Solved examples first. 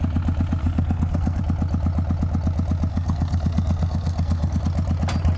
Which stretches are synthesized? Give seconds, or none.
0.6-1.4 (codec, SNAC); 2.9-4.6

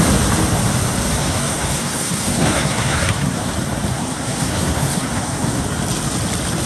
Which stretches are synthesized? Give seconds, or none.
1.2-3.5 (codec, SNAC); 3.9-5.6

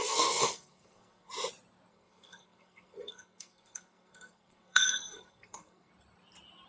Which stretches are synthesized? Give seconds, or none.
0.0-1.3 (codec, SNAC); 1.9-5.9

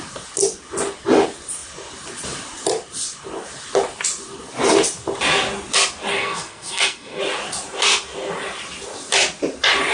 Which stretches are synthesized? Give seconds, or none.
6.1-7.2 (codec, SNAC)

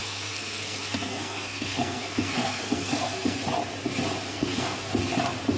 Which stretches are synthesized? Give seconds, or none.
0.0-3.4 (codec, SNAC); 4.3-5.0

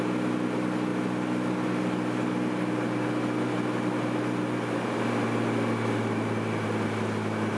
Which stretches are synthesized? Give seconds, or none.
none